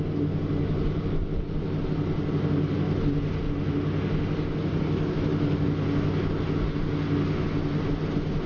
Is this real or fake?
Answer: real